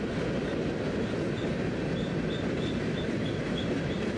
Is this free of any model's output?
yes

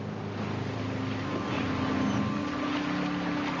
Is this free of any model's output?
yes